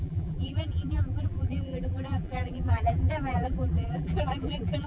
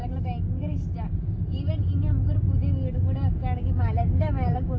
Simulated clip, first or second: first